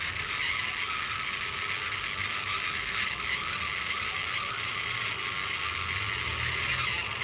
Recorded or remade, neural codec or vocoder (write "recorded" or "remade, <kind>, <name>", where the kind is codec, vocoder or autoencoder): recorded